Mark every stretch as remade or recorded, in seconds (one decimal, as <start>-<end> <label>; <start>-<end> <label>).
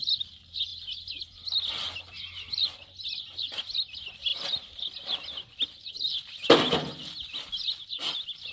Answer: 0.0-8.5 recorded